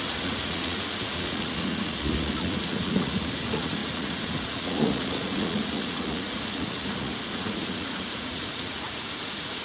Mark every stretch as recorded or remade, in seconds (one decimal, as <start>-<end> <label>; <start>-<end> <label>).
0.0-9.6 remade